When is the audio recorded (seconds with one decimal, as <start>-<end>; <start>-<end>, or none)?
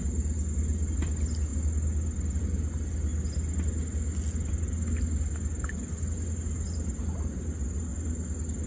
0.0-8.7